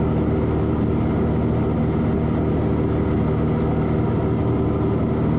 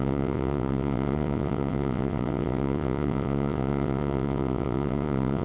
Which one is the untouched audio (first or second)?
first